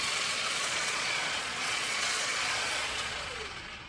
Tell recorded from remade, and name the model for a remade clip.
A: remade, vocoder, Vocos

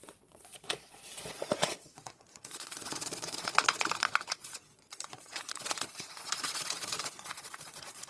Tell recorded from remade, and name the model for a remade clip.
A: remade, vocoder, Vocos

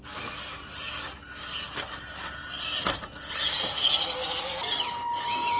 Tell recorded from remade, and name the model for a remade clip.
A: recorded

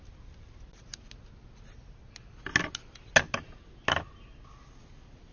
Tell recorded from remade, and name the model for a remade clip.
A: recorded